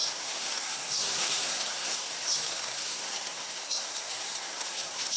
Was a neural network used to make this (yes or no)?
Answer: yes